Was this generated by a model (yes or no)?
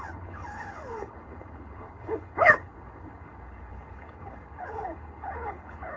yes